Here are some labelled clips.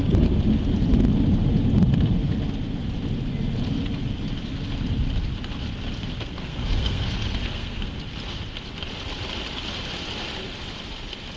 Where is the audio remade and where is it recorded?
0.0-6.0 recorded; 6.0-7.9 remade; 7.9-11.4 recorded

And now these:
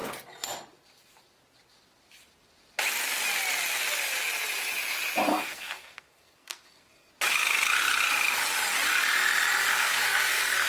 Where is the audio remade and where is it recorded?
0.0-5.3 recorded; 5.3-7.1 remade; 7.1-9.7 recorded; 9.7-10.7 remade

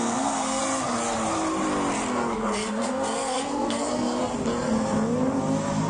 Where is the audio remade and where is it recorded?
0.0-0.6 remade; 0.6-2.1 recorded; 2.1-4.3 remade; 4.3-5.9 recorded

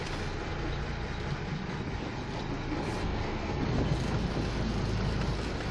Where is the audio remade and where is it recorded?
0.0-3.0 recorded; 3.0-3.6 remade; 3.6-5.7 recorded

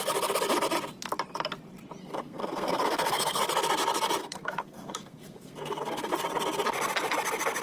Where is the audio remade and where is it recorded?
0.0-2.0 recorded; 2.0-3.4 remade; 3.4-4.2 recorded; 4.2-6.1 remade; 6.1-7.6 recorded

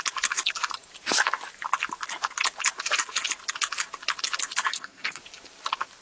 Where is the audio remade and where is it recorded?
0.0-4.7 recorded; 4.7-5.2 remade; 5.2-6.0 recorded

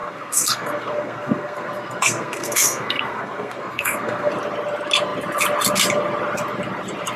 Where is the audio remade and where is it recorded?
0.0-4.3 remade; 4.3-7.2 recorded

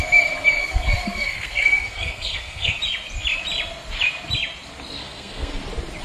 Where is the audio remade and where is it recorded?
0.0-0.6 recorded; 0.6-2.8 remade; 2.8-5.0 recorded; 5.0-5.6 remade; 5.6-6.0 recorded